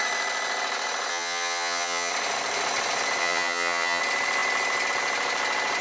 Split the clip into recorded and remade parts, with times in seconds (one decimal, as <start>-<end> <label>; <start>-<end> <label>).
0.0-1.1 recorded; 1.1-2.1 remade; 2.1-3.2 recorded; 3.2-4.0 remade; 4.0-5.8 recorded

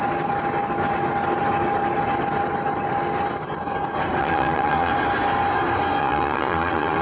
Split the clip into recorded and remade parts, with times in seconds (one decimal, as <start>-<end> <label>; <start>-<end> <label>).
0.0-4.2 recorded; 4.2-4.9 remade; 4.9-6.0 recorded; 6.0-7.0 remade

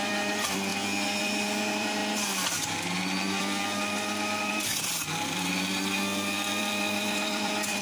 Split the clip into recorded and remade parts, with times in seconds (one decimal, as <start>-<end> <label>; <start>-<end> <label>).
0.0-0.7 remade; 0.7-1.2 recorded; 1.2-7.8 remade

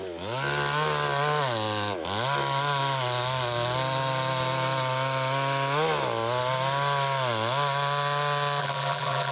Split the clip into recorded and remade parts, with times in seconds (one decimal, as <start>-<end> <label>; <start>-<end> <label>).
0.0-8.6 recorded; 8.6-9.3 remade